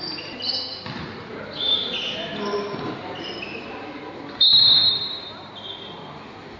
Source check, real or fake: real